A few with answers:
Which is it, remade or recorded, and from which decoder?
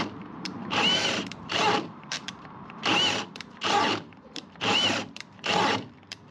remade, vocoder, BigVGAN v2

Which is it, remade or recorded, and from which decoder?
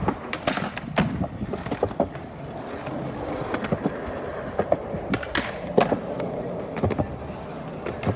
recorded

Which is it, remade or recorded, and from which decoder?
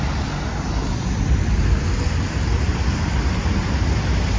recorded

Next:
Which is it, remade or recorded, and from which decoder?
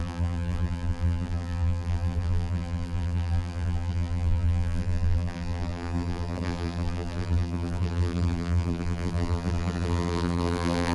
remade, vocoder, BigVGAN v2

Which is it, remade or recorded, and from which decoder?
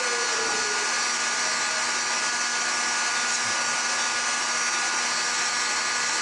recorded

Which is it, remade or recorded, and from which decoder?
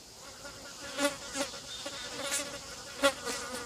recorded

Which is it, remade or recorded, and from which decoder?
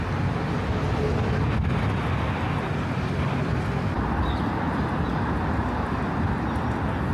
recorded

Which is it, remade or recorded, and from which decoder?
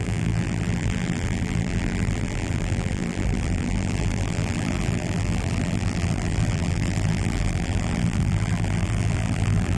remade, vocoder, BigVGAN v2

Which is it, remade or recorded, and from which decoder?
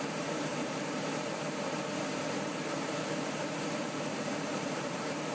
remade, vocoder, BigVGAN v2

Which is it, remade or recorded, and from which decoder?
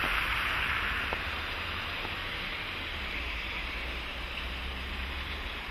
remade, vocoder, BigVGAN v2